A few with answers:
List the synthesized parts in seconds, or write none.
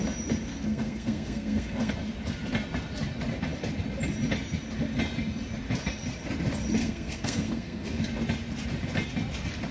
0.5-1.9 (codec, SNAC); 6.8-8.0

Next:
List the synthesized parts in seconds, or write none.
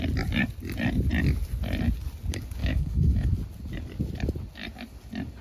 2.6-3.3 (autoencoder, DAC-VAE)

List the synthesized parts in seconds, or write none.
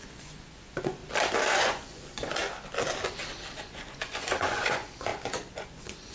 0.0-1.0 (vocoder, Vocos); 1.5-2.4; 3.6-6.1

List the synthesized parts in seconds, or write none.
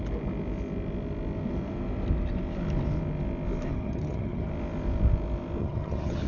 3.7-4.5 (vocoder, HiFi-GAN); 5.6-6.3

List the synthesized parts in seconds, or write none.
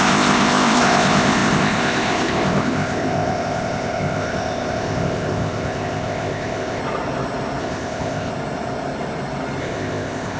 0.0-6.8 (codec, ZipCodec); 7.6-8.3; 9.6-10.4